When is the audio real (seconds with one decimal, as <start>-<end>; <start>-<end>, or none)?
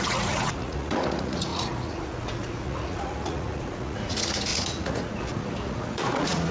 none